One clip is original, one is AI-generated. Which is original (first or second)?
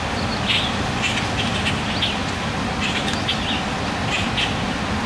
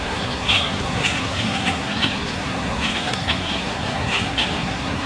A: first